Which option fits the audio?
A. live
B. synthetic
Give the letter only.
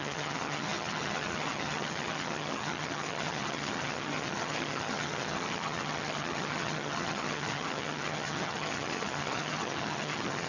B